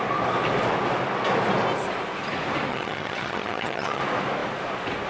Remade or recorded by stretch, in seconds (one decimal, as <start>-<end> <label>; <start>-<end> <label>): 0.0-2.7 recorded; 2.7-4.0 remade; 4.0-5.1 recorded